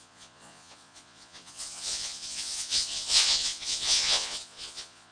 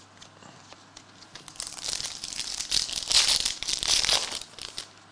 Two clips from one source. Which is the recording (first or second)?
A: second